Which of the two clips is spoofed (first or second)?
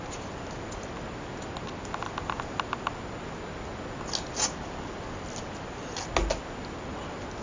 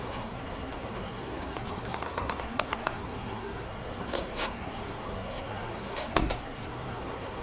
second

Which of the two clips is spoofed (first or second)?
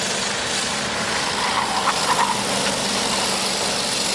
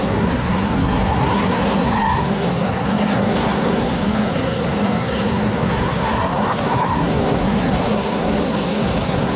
second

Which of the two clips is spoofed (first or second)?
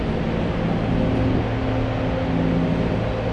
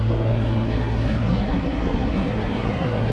second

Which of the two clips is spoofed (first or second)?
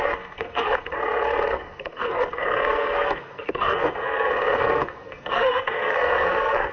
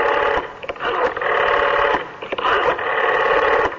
first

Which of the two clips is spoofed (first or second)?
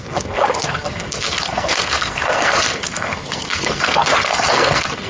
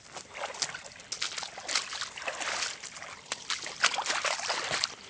first